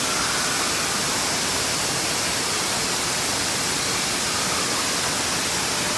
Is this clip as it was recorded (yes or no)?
yes